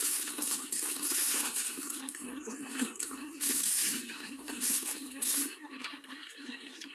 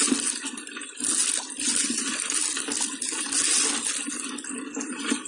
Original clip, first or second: second